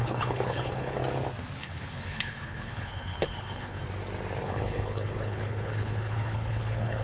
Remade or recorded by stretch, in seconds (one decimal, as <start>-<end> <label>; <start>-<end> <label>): 0.0-1.0 remade; 1.0-1.6 recorded; 1.6-3.8 remade; 3.8-4.4 recorded; 4.4-7.0 remade